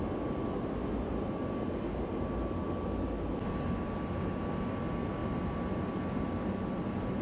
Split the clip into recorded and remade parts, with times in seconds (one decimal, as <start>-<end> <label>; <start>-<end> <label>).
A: 0.0-7.2 recorded